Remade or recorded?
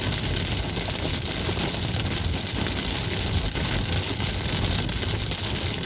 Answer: recorded